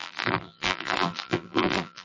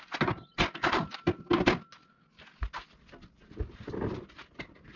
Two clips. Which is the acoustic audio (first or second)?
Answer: second